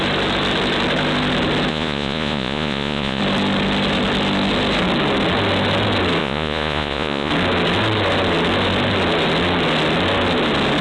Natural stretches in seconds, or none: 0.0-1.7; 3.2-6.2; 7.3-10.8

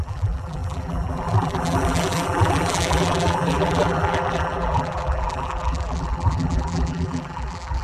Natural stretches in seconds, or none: none